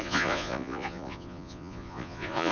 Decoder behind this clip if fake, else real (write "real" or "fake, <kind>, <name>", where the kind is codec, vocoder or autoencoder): fake, vocoder, Vocos